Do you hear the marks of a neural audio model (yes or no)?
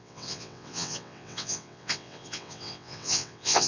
yes